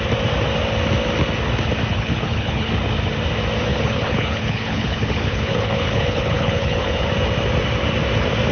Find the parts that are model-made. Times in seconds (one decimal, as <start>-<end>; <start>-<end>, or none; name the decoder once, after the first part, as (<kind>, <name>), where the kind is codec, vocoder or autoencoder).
1.9-2.7 (codec, HILCodec); 3.7-7.1